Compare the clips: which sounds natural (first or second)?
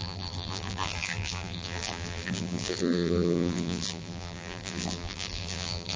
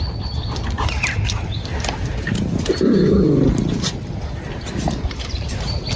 second